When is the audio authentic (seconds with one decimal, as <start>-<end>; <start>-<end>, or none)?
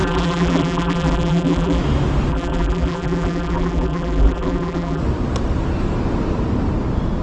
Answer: 1.8-2.3; 5.0-7.2